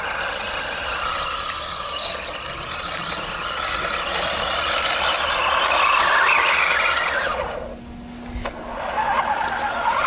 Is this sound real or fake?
real